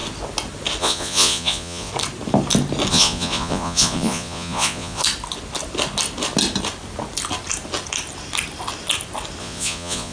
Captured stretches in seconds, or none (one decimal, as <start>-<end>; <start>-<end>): 0.0-0.8; 1.9-2.9; 5.0-9.4